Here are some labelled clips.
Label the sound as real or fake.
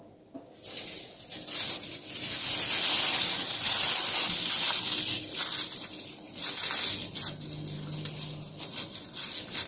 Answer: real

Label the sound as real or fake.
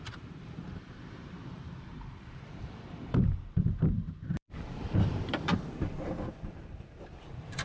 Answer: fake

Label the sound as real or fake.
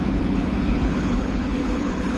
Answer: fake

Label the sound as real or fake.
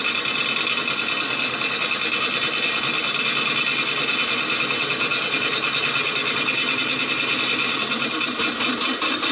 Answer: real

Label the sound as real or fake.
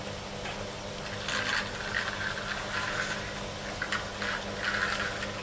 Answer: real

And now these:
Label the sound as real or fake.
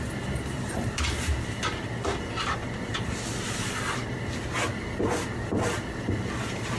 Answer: real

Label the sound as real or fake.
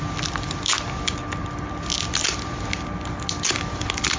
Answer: real